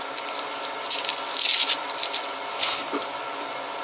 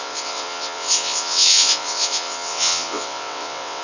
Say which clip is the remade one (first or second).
second